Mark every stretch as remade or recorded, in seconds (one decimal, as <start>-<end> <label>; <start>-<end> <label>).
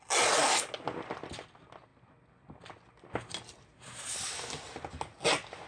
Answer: 0.0-5.7 recorded